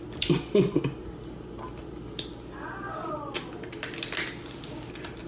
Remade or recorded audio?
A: recorded